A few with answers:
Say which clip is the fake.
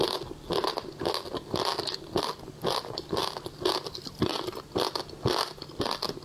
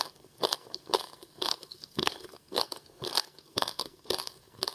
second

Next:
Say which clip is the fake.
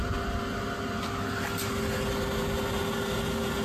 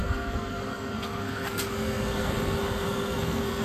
second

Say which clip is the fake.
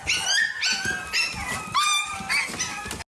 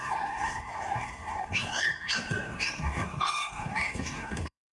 second